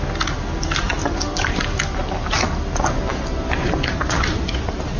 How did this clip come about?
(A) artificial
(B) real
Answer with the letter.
B